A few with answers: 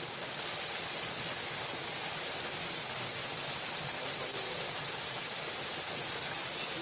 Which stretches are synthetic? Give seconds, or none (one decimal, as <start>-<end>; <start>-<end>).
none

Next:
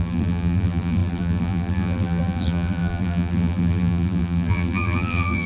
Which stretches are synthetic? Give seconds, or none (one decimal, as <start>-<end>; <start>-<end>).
0.0-5.5

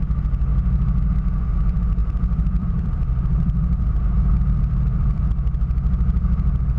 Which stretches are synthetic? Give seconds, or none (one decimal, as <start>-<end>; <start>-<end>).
2.0-5.2

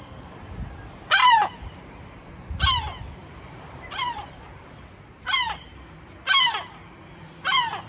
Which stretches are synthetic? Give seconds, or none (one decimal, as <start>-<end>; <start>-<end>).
1.2-1.7; 3.2-5.8

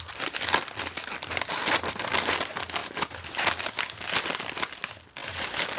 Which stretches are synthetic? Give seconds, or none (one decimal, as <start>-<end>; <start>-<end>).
5.2-5.8

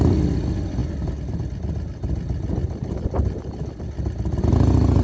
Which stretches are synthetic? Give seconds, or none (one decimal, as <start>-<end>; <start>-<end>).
none